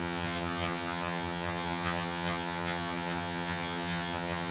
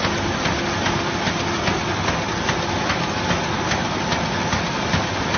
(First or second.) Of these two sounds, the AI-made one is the first